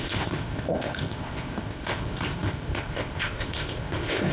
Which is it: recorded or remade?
remade